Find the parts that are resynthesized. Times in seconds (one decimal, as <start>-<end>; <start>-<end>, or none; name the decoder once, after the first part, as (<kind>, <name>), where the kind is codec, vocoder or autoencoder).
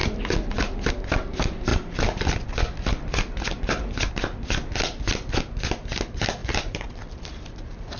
0.0-0.9 (vocoder, BigVGAN v2); 6.4-8.0